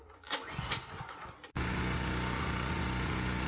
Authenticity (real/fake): fake